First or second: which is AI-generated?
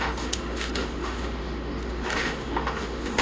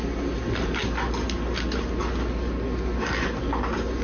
first